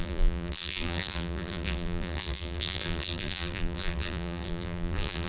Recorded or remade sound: remade